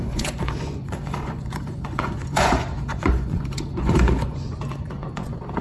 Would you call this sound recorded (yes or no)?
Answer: no